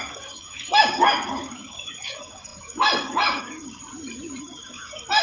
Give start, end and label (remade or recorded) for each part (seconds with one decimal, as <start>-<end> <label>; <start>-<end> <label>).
0.0-3.8 remade; 3.8-4.4 recorded; 4.4-5.2 remade